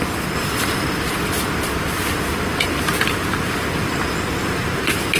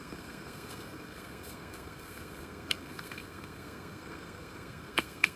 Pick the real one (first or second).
first